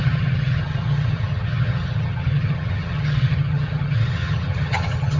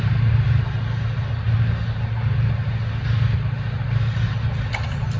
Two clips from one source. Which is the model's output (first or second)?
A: first